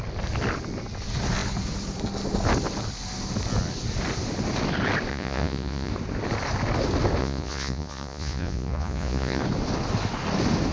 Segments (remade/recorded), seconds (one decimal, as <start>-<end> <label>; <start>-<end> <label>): 0.0-5.1 recorded; 5.1-5.9 remade; 5.9-7.2 recorded; 7.2-9.4 remade; 9.4-10.7 recorded